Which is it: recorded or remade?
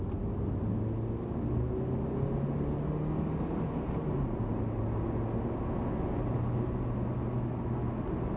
recorded